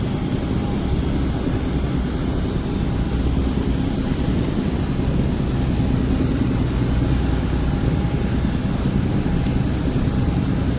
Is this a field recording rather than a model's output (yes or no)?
yes